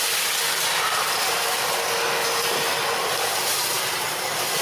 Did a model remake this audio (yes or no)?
no